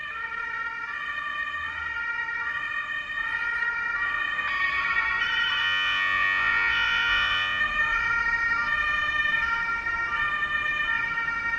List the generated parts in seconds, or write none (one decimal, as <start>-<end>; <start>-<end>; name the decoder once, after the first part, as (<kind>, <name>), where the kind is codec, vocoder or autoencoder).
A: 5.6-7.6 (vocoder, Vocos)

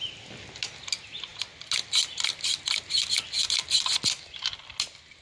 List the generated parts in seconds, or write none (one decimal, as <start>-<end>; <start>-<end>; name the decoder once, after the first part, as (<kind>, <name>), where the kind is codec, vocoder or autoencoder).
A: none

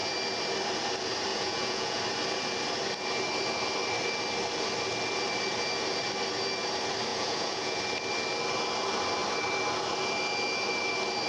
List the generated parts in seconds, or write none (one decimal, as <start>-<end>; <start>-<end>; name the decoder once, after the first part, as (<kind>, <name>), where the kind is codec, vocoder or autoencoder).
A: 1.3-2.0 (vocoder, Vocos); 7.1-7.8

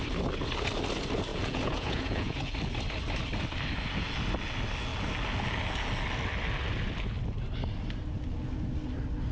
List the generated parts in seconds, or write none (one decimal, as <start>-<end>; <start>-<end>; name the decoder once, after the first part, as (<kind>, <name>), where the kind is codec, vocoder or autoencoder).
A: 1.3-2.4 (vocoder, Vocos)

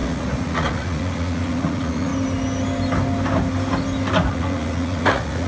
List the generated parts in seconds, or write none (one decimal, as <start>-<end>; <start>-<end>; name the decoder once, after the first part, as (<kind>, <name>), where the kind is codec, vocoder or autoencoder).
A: 0.0-2.1 (vocoder, Vocos); 4.3-5.5

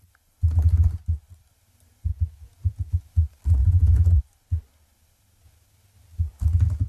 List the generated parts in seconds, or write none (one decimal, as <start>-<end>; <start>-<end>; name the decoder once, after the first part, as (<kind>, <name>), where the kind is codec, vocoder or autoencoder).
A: 2.1-2.9 (vocoder, Vocos); 3.6-4.2

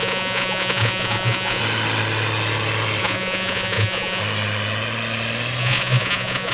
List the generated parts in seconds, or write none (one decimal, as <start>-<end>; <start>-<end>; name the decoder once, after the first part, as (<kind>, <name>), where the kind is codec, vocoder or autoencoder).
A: 0.0-1.6 (vocoder, Vocos); 3.0-4.2; 5.6-6.5

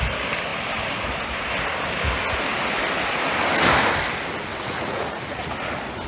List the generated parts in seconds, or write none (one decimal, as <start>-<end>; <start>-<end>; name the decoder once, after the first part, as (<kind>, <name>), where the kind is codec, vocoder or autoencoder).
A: 4.5-5.5 (vocoder, Vocos)